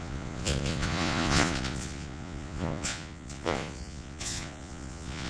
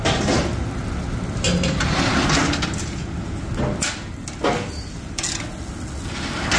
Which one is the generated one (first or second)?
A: first